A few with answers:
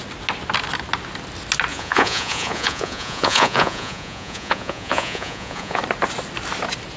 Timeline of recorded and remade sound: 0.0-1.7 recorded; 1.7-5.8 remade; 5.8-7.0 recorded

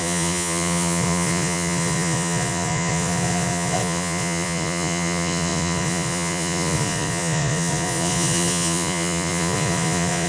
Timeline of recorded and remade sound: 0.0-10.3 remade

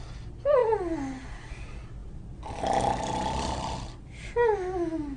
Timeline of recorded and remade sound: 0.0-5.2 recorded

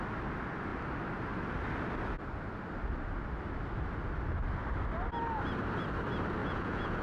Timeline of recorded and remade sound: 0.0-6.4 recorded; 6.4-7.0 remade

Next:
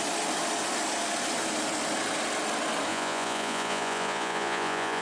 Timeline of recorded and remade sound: 0.0-2.9 recorded; 2.9-5.0 remade

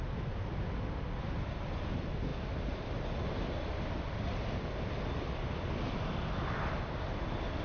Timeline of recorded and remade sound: 0.0-7.6 recorded